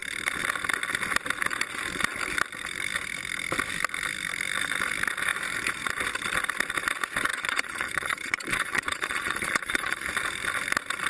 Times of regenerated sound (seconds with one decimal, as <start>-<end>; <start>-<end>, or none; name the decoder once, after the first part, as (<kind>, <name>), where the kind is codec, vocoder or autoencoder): 7.3-10.1 (vocoder, Vocos)